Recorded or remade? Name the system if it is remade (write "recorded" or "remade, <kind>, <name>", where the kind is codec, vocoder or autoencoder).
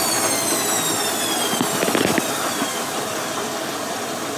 remade, vocoder, BigVGAN v2